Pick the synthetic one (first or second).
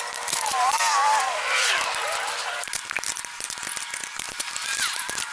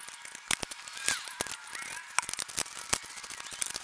first